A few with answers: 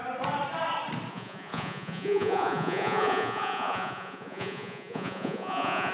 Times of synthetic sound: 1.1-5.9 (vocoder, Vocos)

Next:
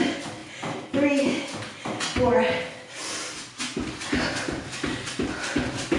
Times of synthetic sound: none

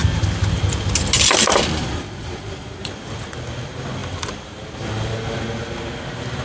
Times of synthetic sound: 1.8-2.9 (vocoder, Vocos)

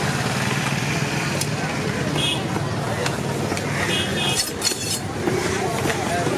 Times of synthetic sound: 4.1-5.5 (vocoder, BigVGAN v2)

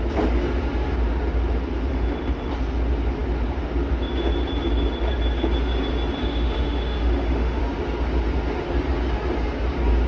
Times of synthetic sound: 1.9-2.5 (autoencoder, DAC-VAE); 6.2-7.6

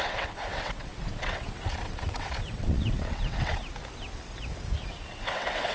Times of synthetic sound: 0.0-3.6 (vocoder, WaveNeXt); 5.1-5.7

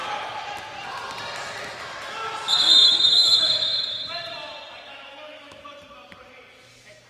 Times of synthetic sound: 2.7-3.5 (autoencoder, DAC-VAE); 4.9-5.6